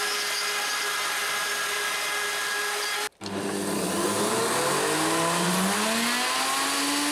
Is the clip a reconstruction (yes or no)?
no